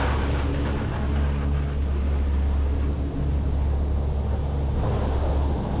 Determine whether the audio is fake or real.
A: real